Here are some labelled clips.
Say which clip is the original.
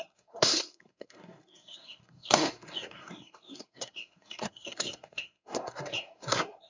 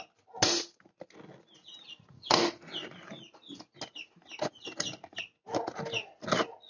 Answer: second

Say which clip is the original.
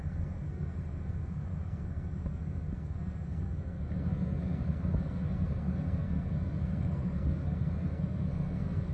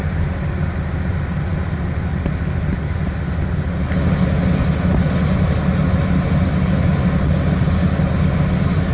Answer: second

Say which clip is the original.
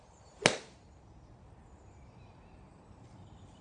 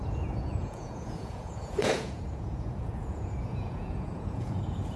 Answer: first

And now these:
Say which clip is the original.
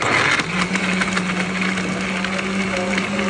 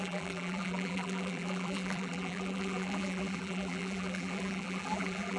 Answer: first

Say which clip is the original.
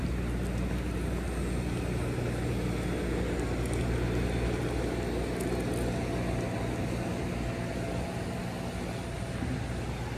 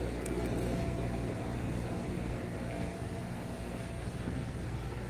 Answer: first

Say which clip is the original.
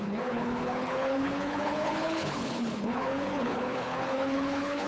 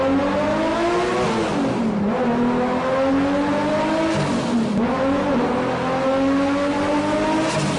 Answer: second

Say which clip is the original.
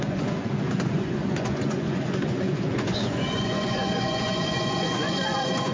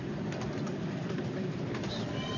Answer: second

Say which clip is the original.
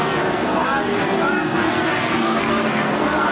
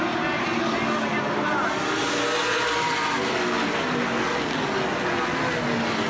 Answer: second